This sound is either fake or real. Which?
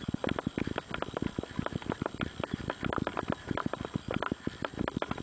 real